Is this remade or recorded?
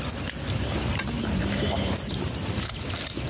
recorded